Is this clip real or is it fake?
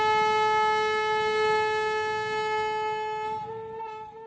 real